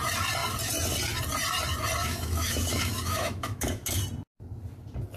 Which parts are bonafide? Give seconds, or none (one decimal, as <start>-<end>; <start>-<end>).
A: 0.0-2.0; 4.0-5.2

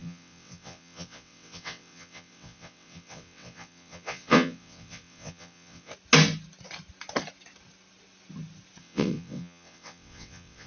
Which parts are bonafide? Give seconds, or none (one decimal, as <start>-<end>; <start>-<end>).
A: 5.9-8.8